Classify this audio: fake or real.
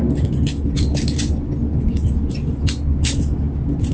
real